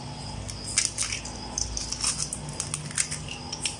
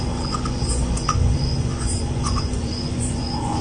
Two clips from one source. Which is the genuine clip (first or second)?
first